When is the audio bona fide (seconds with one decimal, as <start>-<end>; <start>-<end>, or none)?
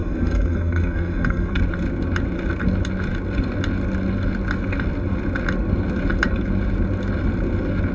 1.6-7.9